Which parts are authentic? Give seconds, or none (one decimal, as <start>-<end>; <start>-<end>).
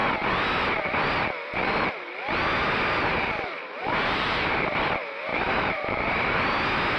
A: 0.0-3.1; 4.8-5.3; 6.4-7.0